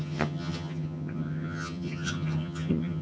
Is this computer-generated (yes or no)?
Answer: yes